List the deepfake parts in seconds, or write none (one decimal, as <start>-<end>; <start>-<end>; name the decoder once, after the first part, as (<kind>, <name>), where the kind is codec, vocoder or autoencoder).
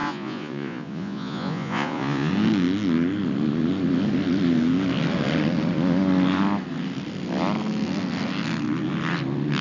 0.0-2.3 (vocoder, Vocos)